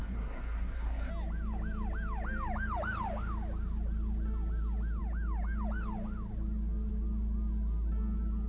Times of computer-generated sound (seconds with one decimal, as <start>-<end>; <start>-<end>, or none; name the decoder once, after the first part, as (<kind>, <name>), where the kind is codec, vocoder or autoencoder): 0.0-1.1 (codec, SNAC)

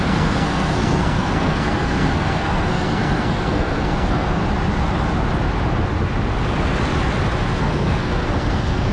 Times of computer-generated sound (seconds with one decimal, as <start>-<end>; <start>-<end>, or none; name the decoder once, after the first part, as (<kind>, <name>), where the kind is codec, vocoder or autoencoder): 0.0-4.4 (codec, SNAC); 7.6-8.9